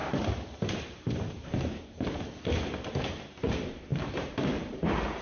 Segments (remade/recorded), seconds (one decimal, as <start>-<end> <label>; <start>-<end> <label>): 0.0-5.2 remade